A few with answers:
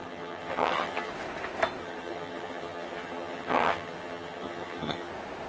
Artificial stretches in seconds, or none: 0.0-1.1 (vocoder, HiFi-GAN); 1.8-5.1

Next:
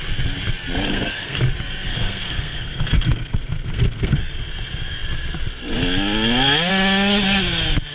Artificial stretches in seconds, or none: 0.9-1.4 (codec, SNAC); 1.9-4.2

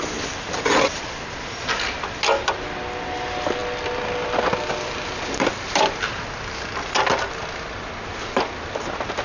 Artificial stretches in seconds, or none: none

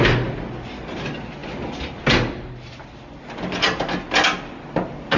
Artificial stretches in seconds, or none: none

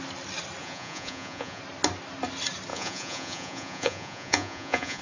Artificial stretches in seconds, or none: 0.6-1.6 (vocoder, Vocos); 2.7-5.0

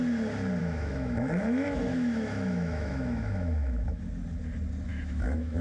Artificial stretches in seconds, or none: 0.6-4.0 (autoencoder, DAC-VAE); 4.9-5.6